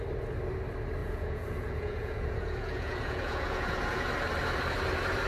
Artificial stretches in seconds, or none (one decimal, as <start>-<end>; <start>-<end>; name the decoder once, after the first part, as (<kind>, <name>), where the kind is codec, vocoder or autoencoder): 1.0-4.1 (vocoder, Vocos)